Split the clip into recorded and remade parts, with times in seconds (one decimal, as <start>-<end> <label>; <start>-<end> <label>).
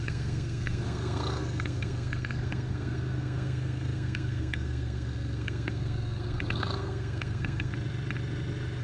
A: 0.0-7.7 remade; 7.7-8.8 recorded